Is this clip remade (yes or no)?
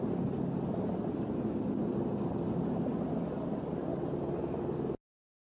no